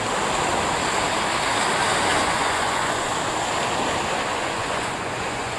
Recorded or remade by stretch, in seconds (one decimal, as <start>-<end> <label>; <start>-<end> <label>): 0.0-2.1 recorded; 2.1-3.1 remade; 3.1-4.3 recorded; 4.3-5.6 remade